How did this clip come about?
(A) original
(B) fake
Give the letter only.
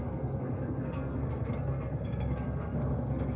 B